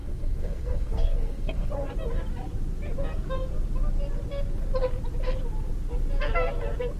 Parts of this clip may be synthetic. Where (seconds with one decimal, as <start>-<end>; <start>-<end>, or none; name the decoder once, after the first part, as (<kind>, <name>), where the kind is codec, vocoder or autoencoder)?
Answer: 0.0-1.7 (codec, SNAC)

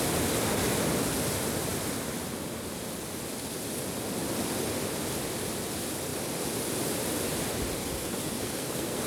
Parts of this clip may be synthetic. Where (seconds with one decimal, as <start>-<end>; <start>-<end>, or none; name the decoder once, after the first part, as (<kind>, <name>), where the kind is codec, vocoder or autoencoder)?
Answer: 7.8-9.1 (codec, SNAC)

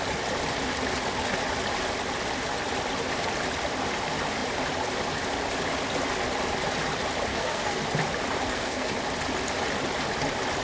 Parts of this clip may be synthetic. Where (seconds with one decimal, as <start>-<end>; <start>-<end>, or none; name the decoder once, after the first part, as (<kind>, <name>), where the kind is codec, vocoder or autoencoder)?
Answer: 7.3-7.8 (codec, SNAC); 8.4-8.9

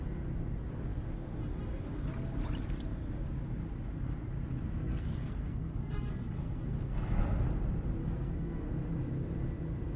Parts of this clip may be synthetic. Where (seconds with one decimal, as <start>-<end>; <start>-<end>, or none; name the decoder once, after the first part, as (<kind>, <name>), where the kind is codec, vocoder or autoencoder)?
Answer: 4.8-7.2 (codec, SNAC); 8.0-8.7